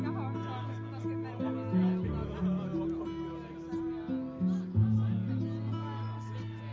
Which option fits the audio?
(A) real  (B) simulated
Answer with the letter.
A